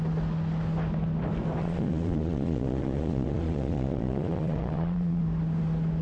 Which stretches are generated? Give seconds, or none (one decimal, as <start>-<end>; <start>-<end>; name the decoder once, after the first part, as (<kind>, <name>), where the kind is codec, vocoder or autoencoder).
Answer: 1.6-5.2 (vocoder, Vocos)